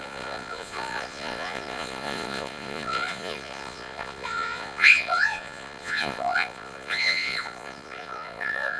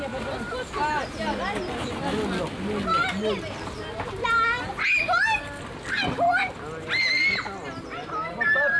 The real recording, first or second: second